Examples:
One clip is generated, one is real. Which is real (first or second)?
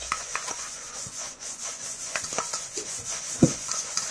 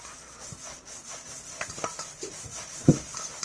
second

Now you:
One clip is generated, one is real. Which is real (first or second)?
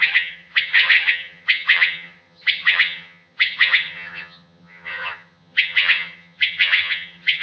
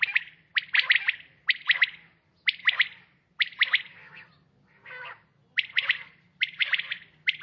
second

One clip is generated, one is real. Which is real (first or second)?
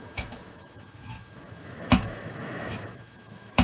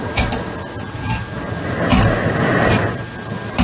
second